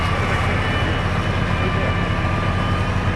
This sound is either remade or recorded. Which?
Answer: recorded